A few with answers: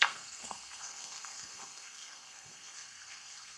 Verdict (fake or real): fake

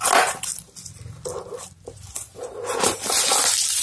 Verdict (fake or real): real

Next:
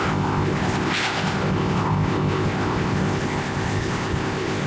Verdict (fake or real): fake